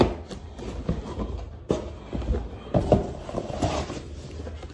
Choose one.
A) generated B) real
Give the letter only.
B